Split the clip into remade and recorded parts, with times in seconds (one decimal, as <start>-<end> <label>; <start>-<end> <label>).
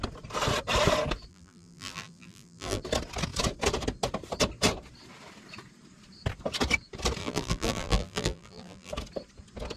0.0-1.3 recorded; 1.3-2.8 remade; 2.8-7.2 recorded; 7.2-8.9 remade; 8.9-9.8 recorded